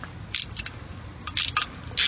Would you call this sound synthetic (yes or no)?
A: no